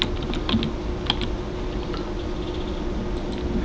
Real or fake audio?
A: real